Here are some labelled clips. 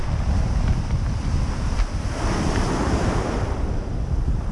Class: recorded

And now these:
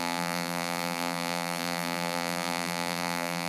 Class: remade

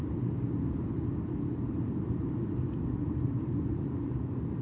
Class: recorded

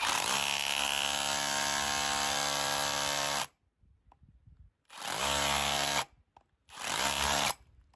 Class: recorded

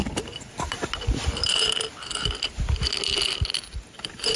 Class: recorded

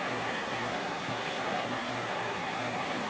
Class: remade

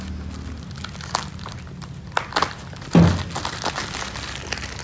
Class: recorded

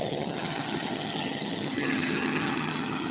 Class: remade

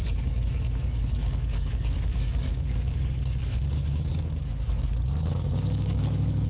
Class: remade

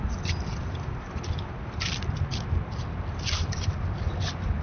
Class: recorded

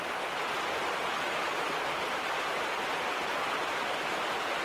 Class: recorded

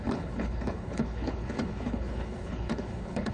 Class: remade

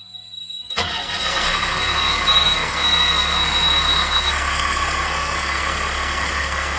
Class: remade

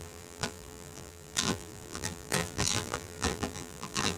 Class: remade